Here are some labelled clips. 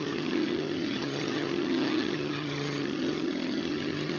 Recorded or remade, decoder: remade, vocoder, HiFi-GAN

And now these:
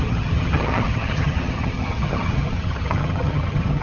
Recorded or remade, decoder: remade, vocoder, HiFi-GAN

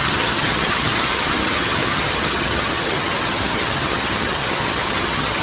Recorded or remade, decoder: remade, vocoder, HiFi-GAN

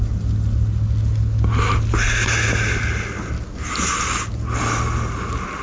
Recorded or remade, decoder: recorded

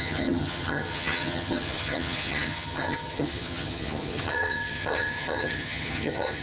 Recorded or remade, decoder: remade, vocoder, HiFi-GAN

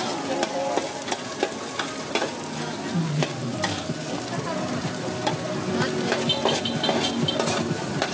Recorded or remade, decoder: recorded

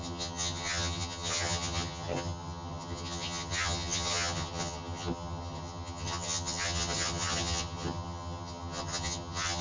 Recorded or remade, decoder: remade, vocoder, HiFi-GAN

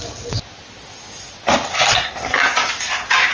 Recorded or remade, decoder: recorded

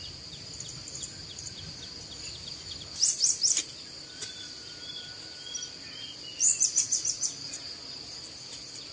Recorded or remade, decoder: recorded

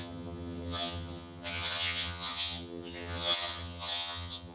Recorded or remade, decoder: remade, vocoder, HiFi-GAN